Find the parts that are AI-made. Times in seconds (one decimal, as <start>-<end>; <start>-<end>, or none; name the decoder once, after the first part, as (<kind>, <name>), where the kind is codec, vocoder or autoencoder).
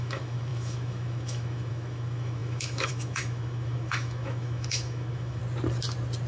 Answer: 0.0-5.4 (autoencoder, DAC-VAE)